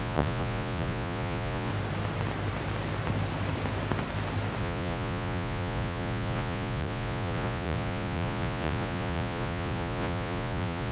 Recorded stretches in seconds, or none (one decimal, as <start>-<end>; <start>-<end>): 1.7-4.6